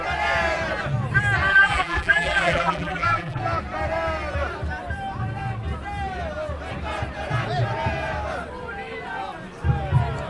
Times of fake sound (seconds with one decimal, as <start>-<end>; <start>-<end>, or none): 1.5-3.4